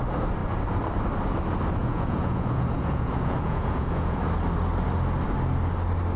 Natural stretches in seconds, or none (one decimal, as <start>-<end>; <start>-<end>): 0.0-1.8; 4.2-6.2